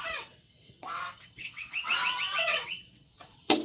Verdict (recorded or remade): remade